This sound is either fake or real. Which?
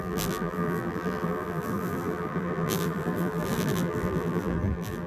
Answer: fake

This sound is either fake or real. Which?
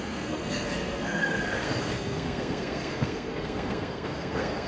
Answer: fake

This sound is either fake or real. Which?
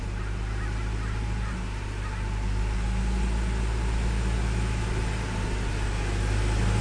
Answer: real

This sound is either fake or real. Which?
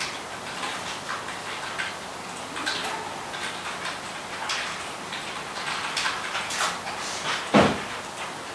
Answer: real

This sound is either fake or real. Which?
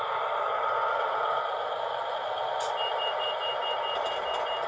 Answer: real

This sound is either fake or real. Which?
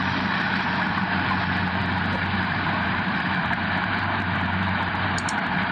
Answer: fake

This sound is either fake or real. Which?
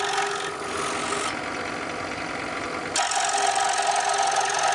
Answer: real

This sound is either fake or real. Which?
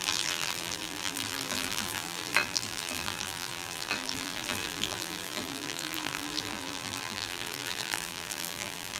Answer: fake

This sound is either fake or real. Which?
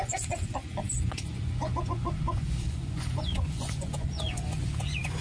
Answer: fake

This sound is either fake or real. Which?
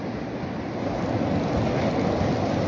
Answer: real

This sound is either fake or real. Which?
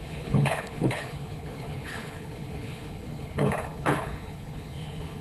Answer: fake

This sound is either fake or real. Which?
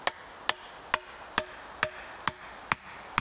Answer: real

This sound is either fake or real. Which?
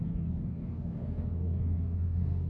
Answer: fake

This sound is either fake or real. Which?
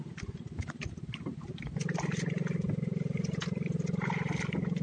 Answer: real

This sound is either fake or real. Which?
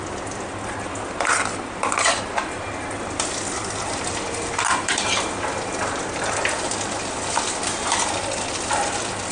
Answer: real